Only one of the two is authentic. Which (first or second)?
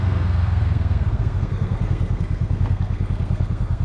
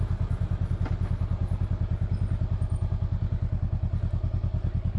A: second